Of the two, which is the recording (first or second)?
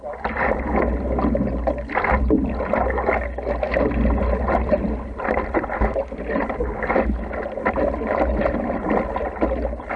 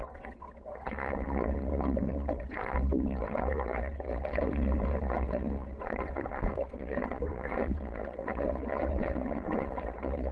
first